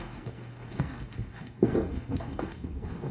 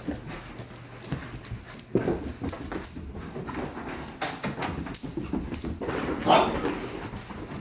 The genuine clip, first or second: second